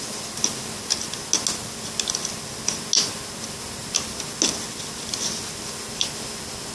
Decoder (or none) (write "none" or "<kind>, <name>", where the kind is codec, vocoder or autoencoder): none